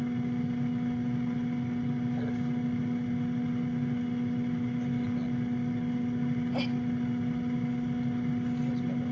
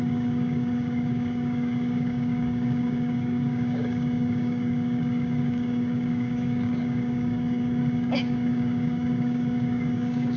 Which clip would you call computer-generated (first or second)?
second